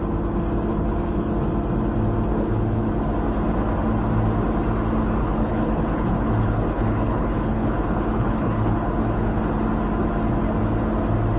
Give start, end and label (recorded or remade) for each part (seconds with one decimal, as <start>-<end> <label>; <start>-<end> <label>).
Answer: 0.0-0.7 recorded; 0.7-1.3 remade; 1.3-2.3 recorded; 2.3-2.9 remade; 2.9-5.2 recorded; 5.2-9.4 remade; 9.4-11.4 recorded